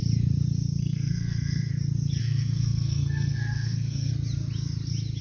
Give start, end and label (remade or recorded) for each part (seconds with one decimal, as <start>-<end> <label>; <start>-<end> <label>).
0.0-0.8 recorded; 0.8-1.7 remade; 1.7-2.2 recorded; 2.2-4.1 remade; 4.1-5.2 recorded